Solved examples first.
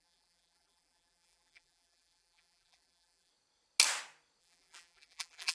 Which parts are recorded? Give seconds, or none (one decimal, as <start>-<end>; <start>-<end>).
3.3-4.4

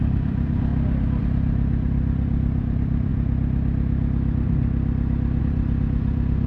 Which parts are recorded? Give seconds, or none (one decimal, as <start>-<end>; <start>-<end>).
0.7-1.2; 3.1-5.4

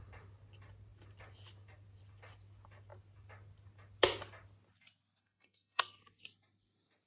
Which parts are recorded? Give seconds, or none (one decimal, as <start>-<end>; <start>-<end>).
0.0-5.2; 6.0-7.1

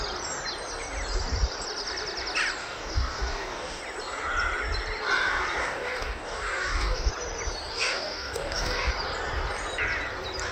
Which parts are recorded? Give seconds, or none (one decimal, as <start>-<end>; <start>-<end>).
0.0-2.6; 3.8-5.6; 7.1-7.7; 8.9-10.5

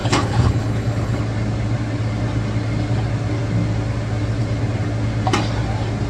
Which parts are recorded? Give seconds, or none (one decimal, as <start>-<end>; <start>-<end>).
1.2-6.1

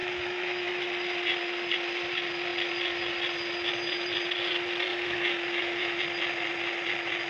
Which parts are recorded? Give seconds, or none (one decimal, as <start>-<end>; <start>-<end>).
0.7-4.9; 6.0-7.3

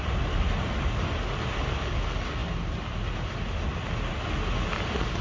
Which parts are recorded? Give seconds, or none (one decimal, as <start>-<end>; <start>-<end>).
0.0-5.2

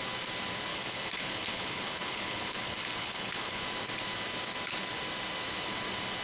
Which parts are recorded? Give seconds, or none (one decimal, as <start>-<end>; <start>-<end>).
0.0-0.7; 3.6-6.2